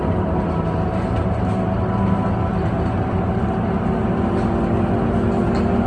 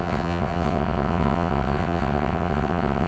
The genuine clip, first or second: first